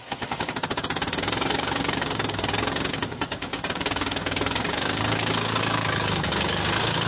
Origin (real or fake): fake